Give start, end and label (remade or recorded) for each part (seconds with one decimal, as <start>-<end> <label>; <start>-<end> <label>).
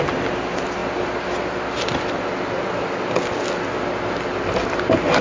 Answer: 0.0-5.2 recorded